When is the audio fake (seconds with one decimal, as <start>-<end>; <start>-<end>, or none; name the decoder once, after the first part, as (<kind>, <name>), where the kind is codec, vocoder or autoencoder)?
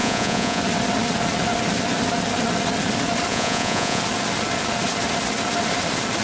0.0-0.6 (vocoder, Vocos); 3.3-4.0